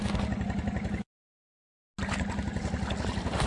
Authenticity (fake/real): real